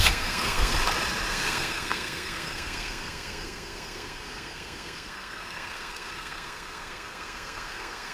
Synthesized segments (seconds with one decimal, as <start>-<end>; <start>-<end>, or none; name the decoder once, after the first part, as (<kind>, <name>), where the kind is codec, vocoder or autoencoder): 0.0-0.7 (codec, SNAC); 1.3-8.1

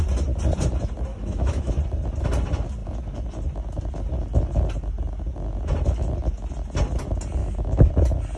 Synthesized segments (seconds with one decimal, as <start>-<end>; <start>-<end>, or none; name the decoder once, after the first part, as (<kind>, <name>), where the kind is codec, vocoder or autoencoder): 1.1-1.7 (autoencoder, DAC-VAE); 7.4-7.9

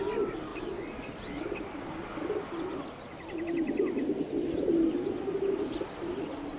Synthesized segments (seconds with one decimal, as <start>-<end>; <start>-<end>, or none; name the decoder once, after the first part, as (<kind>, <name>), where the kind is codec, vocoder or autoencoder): none

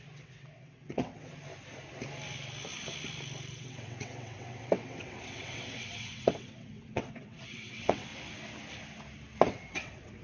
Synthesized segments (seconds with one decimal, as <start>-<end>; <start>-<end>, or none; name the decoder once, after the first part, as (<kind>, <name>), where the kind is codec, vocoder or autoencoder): 0.0-1.3 (vocoder, WaveNeXt); 3.5-8.1; 9.5-10.2

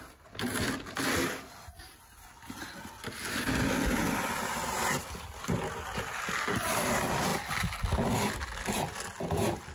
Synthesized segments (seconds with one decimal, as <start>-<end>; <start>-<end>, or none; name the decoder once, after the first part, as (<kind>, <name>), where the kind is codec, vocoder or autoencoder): none